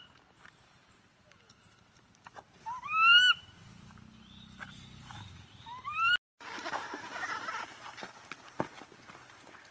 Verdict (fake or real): real